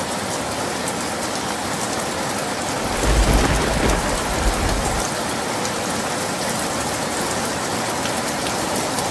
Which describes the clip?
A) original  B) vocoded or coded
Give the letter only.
A